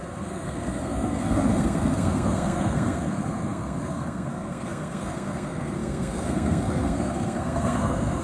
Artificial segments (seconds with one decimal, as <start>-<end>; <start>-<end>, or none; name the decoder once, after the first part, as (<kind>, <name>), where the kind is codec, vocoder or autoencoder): 0.0-8.2 (codec, SNAC)